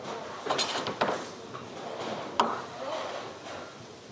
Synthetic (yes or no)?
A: no